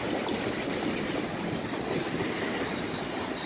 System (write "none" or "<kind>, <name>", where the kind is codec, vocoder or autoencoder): none